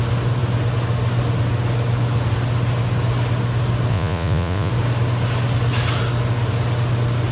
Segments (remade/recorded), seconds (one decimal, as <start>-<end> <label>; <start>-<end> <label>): 0.0-3.9 recorded; 3.9-4.7 remade; 4.7-7.3 recorded

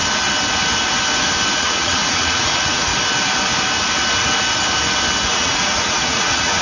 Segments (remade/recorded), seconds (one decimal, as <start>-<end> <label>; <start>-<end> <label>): 0.0-1.6 recorded; 1.6-2.9 remade; 2.9-5.3 recorded; 5.3-6.6 remade

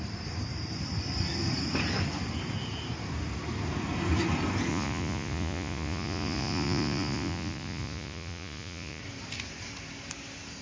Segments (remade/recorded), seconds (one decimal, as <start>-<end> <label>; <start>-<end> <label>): 0.0-4.7 recorded; 4.7-9.0 remade; 9.0-10.6 recorded

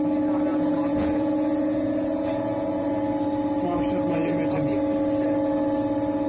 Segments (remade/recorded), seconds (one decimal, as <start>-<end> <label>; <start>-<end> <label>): 0.0-0.5 recorded; 0.5-2.9 remade; 2.9-6.3 recorded

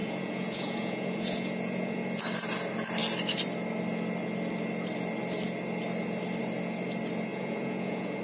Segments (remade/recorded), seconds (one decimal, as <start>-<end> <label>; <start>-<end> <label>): 0.0-2.2 remade; 2.2-7.3 recorded; 7.3-8.2 remade

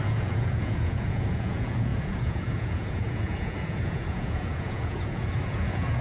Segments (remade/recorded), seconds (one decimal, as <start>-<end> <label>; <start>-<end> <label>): 0.0-6.0 remade